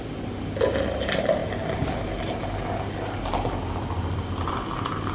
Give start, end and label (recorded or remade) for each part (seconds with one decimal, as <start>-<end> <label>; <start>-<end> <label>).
0.0-5.1 recorded